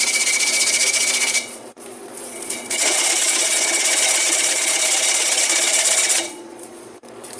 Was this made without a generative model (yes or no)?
no